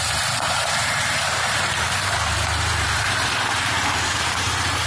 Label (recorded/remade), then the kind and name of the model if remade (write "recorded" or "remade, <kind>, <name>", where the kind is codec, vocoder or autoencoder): remade, vocoder, BigVGAN v2